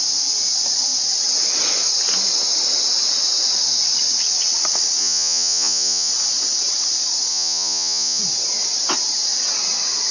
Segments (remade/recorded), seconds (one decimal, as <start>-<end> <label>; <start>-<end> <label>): 0.0-5.0 recorded; 5.0-6.1 remade; 6.1-7.3 recorded; 7.3-8.2 remade; 8.2-10.1 recorded